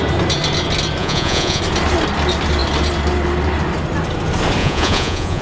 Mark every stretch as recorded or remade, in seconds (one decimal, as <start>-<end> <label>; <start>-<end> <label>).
0.0-1.0 recorded; 1.0-1.6 remade; 1.6-4.6 recorded; 4.6-5.4 remade